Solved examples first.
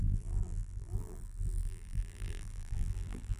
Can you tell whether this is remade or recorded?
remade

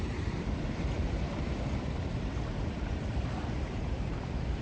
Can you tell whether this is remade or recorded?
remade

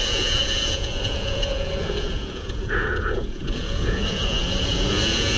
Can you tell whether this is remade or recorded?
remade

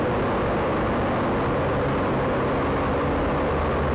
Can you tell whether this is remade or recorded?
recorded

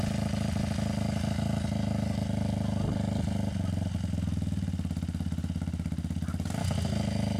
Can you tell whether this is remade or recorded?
recorded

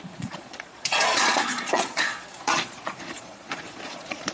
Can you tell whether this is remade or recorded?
remade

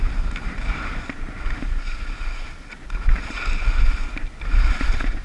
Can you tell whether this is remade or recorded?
recorded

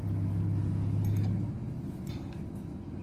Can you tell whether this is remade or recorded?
recorded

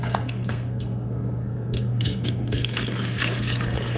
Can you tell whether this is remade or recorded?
remade